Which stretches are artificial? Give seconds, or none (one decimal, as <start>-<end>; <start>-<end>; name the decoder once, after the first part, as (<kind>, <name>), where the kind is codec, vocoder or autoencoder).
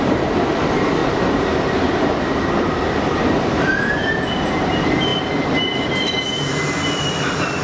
0.0-1.0 (vocoder, BigVGAN v2); 3.4-5.1